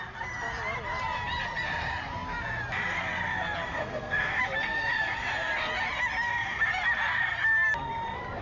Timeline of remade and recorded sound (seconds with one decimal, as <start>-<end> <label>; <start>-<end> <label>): 0.0-3.7 recorded; 3.7-4.4 remade; 4.4-8.4 recorded